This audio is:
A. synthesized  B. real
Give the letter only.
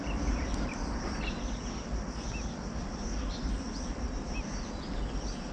B